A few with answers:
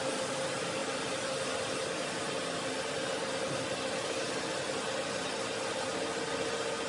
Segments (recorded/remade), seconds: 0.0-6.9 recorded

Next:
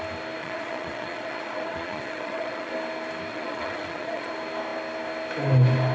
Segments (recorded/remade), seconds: 0.0-0.4 recorded; 0.4-2.7 remade; 2.7-3.3 recorded; 3.3-4.3 remade; 4.3-5.9 recorded